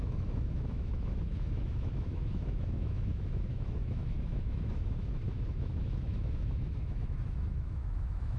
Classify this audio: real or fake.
fake